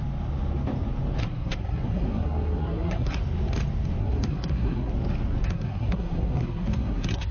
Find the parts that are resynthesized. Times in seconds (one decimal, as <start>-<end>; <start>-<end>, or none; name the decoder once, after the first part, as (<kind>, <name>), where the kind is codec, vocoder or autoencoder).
1.2-3.2 (codec, SNAC); 4.0-4.9; 5.4-7.3